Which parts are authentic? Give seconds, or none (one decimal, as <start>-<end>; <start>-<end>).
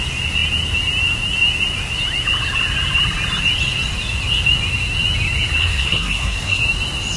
0.0-5.6; 6.6-7.2